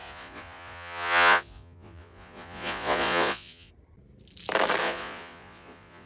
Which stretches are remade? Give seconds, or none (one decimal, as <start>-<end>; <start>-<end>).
0.0-3.7; 4.8-6.1